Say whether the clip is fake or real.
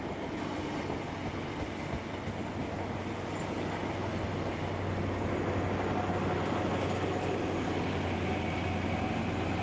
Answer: real